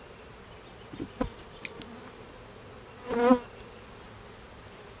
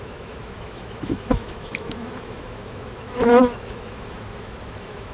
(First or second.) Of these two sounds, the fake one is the second